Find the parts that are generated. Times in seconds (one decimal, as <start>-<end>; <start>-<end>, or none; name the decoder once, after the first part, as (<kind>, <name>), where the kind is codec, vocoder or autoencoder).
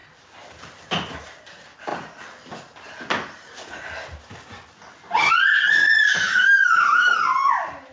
5.8-7.2 (autoencoder, DAC-VAE)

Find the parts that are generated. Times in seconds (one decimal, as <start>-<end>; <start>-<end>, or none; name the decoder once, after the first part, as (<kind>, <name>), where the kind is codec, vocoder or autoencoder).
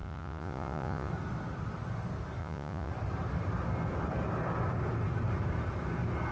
0.0-1.1 (vocoder, Vocos); 2.4-2.9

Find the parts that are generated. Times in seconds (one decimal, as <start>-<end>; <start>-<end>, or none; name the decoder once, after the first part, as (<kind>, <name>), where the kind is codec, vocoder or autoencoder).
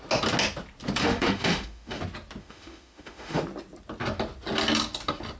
1.0-2.0 (autoencoder, DAC-VAE); 2.4-3.4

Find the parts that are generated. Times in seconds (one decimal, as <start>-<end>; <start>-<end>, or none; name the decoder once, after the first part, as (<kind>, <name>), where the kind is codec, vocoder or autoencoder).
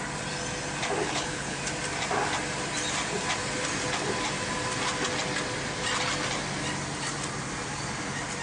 1.0-1.6 (codec, HILCodec)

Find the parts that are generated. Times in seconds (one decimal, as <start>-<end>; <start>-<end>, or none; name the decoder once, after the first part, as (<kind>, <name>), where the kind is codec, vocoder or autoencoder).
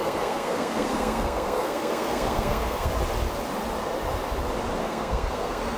0.0-2.9 (codec, SNAC); 4.8-5.8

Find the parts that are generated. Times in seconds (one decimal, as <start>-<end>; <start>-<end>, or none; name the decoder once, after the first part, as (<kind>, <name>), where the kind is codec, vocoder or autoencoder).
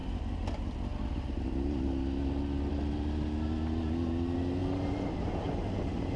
none